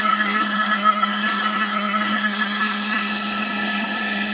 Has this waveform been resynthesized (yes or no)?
yes